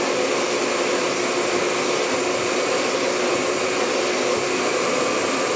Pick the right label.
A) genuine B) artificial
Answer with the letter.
A